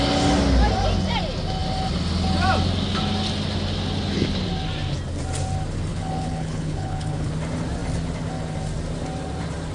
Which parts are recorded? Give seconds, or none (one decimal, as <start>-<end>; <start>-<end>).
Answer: 0.0-5.9; 7.3-9.7